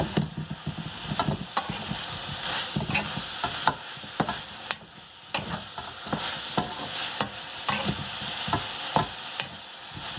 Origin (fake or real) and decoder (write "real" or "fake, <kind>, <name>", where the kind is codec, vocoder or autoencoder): real